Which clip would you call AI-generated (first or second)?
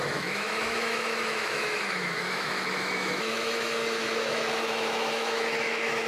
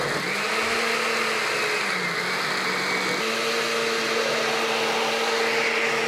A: first